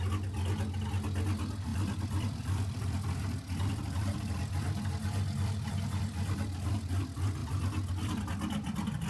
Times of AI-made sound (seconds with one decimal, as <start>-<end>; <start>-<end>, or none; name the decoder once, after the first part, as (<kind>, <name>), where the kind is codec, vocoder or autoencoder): 1.7-6.9 (vocoder, BigVGAN v2); 7.4-8.2